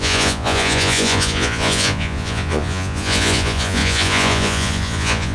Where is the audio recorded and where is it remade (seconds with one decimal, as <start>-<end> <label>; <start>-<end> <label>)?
0.0-5.3 remade